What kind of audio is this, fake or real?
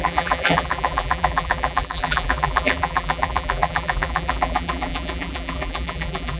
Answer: fake